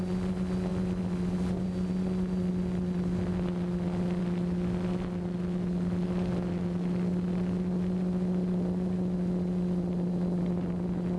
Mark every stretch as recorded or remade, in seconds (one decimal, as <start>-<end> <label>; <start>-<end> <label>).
0.0-11.2 recorded